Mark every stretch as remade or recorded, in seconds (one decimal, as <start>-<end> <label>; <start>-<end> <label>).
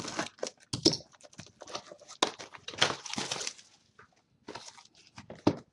0.0-5.7 recorded